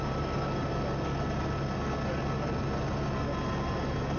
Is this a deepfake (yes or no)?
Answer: no